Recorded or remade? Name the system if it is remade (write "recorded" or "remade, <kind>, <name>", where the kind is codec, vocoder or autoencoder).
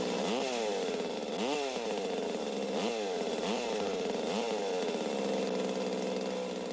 recorded